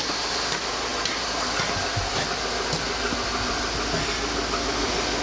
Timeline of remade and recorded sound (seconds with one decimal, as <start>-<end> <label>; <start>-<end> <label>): 0.0-5.2 recorded